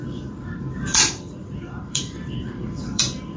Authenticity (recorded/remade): remade